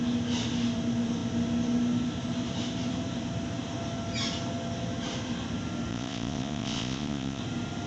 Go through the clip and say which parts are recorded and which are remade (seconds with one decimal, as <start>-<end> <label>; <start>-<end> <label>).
0.0-5.9 recorded; 5.9-7.4 remade; 7.4-7.9 recorded